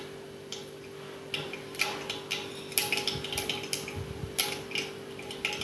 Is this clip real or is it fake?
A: real